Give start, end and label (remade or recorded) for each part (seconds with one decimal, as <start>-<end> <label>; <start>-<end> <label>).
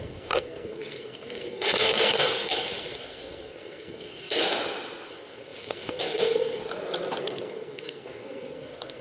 0.0-4.4 remade; 4.4-5.1 recorded; 5.1-6.6 remade; 6.6-7.2 recorded; 7.2-9.0 remade